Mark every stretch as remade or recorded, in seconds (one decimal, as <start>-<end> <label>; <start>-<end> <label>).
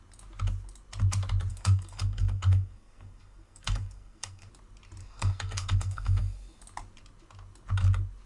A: 0.0-1.5 recorded; 1.5-4.5 remade; 4.5-5.0 recorded; 5.0-6.6 remade; 6.6-8.3 recorded